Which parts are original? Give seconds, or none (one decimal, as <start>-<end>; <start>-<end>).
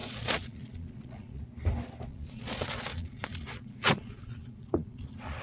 1.4-2.1